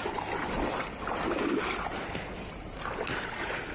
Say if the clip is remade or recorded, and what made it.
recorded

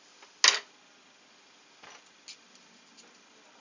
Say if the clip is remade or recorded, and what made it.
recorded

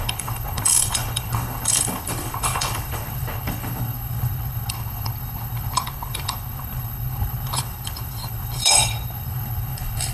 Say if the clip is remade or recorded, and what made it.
remade, codec, HILCodec